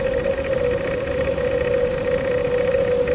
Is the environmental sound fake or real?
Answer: real